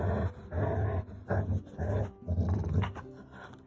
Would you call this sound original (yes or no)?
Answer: yes